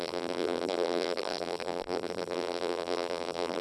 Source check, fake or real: fake